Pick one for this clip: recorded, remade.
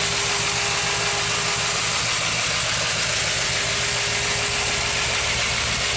recorded